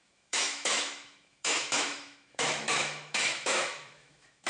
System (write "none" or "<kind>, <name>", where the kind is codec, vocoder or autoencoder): autoencoder, DAC-VAE